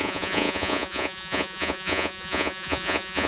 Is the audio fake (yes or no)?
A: yes